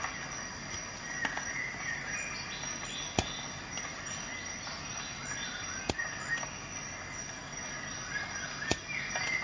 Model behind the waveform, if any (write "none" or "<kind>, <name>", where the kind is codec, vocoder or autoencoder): none